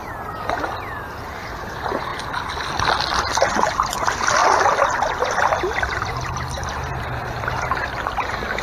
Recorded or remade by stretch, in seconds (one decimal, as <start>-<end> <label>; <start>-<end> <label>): 0.0-2.1 recorded; 2.1-3.2 remade; 3.2-4.4 recorded; 4.4-7.4 remade; 7.4-8.6 recorded